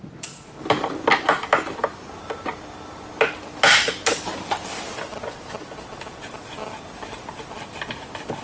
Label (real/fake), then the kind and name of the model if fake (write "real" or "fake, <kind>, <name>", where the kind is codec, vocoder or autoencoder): real